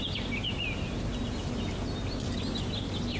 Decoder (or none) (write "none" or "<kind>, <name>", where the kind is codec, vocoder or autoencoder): none